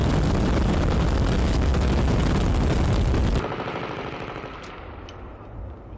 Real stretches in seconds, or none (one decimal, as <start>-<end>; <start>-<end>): 0.0-6.0